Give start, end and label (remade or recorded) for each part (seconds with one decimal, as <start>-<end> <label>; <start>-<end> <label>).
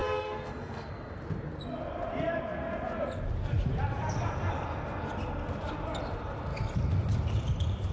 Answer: 0.0-1.2 remade; 1.2-7.9 recorded